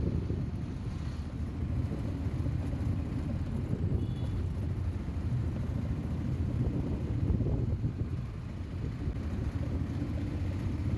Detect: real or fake real